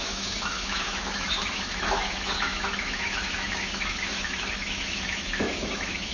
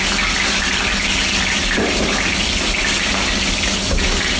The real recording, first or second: second